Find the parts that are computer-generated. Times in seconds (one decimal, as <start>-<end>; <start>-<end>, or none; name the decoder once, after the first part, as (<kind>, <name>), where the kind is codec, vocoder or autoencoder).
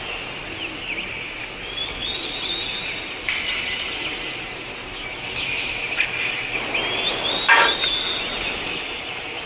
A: none